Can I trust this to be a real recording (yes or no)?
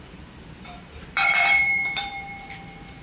no